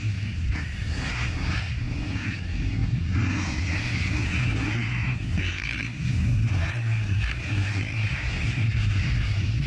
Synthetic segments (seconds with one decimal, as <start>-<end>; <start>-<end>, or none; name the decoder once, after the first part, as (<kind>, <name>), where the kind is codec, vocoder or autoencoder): 0.0-9.7 (codec, SNAC)